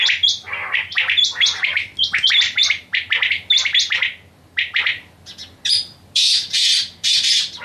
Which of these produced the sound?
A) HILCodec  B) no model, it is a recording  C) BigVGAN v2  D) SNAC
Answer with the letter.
B